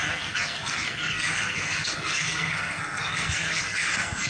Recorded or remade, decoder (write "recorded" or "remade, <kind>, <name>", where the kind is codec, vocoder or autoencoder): remade, codec, SNAC